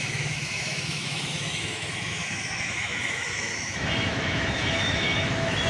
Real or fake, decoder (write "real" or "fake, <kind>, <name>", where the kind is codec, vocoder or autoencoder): fake, autoencoder, DAC-VAE